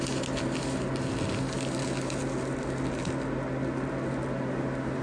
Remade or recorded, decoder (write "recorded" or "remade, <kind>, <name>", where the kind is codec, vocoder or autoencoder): recorded